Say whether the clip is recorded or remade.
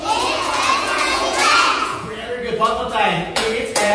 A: remade